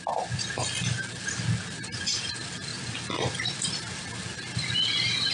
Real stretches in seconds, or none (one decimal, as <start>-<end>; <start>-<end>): 0.0-5.3